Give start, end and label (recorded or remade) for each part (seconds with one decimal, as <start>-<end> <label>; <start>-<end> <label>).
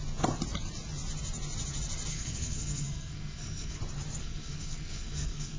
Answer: 0.0-2.1 recorded; 2.1-3.8 remade; 3.8-4.2 recorded; 4.2-5.6 remade